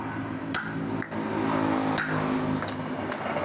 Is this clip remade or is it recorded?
recorded